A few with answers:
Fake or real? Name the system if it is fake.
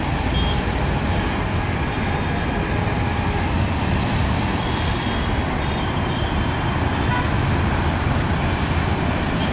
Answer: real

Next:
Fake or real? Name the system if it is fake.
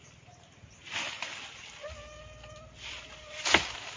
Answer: real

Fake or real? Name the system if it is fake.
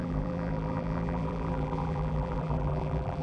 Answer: fake, vocoder, BigVGAN v2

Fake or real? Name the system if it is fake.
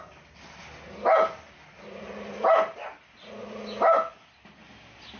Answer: real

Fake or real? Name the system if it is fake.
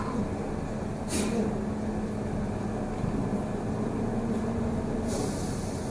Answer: real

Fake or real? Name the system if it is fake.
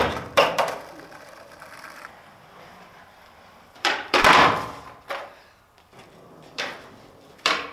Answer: fake, vocoder, BigVGAN v2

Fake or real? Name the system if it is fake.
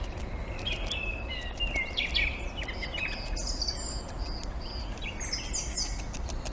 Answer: real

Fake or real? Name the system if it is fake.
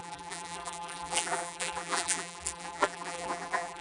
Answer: fake, vocoder, BigVGAN v2